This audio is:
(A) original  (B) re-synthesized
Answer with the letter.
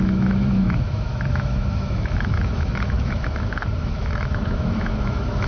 B